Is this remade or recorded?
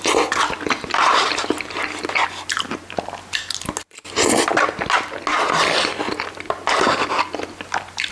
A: recorded